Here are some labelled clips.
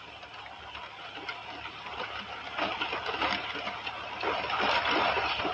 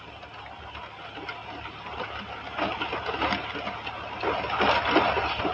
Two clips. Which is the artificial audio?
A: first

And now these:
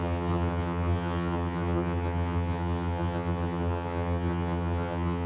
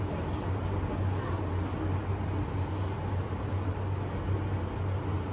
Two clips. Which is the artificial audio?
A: first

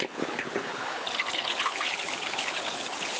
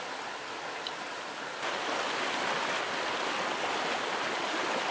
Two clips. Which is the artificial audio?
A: first